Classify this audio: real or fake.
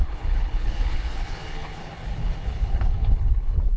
fake